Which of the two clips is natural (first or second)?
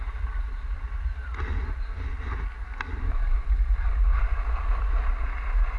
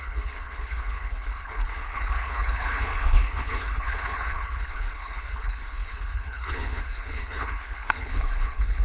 first